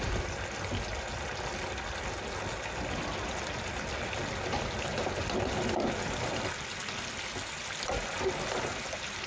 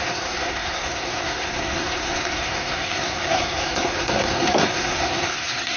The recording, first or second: first